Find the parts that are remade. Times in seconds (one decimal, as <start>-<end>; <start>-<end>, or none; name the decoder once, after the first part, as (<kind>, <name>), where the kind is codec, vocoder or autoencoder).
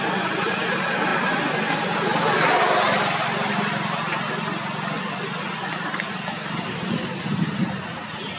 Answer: none